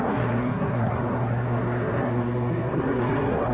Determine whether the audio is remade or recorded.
remade